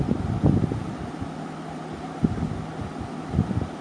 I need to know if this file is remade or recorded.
recorded